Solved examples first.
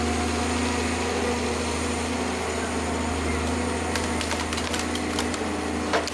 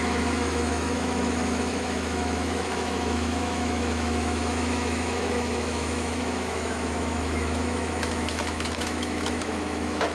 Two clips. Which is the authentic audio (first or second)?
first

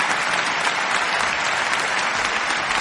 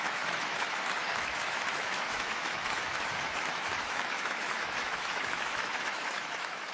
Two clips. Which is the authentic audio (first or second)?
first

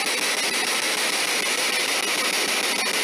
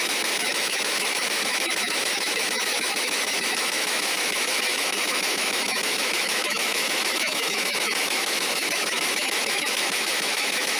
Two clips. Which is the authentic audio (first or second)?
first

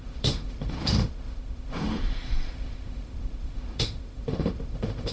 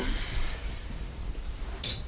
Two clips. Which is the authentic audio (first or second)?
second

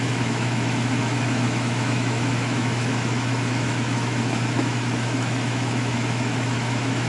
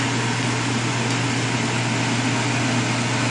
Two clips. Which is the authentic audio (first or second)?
second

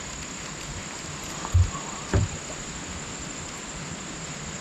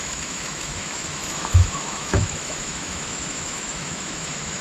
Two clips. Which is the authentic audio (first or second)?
first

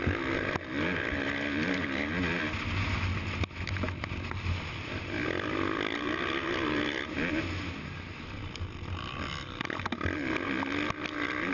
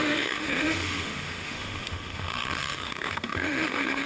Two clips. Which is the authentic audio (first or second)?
first